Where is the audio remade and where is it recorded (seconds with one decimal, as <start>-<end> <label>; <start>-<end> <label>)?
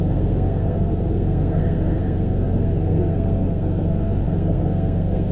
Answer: 0.0-5.3 remade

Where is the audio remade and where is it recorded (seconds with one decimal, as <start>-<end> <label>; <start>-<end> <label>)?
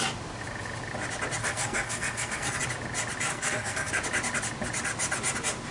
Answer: 0.0-1.4 recorded; 1.4-2.6 remade; 2.6-3.3 recorded; 3.3-3.9 remade; 3.9-5.7 recorded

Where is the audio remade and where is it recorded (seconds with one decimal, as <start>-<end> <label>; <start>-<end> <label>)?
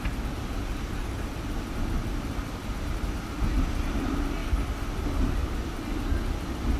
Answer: 0.0-6.8 recorded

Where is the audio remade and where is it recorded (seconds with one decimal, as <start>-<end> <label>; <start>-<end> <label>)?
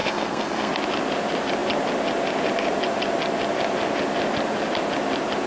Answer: 0.0-0.7 remade; 0.7-5.5 recorded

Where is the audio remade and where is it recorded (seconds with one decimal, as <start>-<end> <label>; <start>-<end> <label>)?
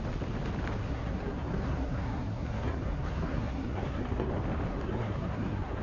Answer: 0.0-0.8 recorded; 0.8-4.3 remade; 4.3-4.7 recorded; 4.7-5.8 remade